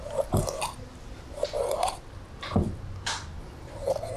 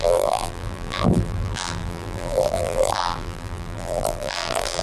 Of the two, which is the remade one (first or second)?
second